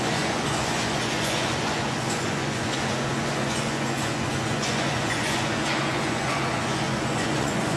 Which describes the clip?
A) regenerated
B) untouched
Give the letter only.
A